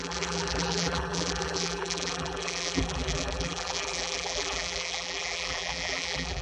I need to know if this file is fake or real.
fake